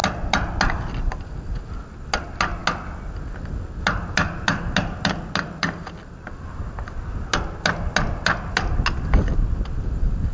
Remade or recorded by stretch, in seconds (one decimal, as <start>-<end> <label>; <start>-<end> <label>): 0.0-10.3 recorded